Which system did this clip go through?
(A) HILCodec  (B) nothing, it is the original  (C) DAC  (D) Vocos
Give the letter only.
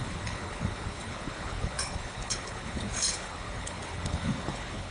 A